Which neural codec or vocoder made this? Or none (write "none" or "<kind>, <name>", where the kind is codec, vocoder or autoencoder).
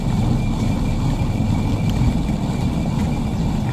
none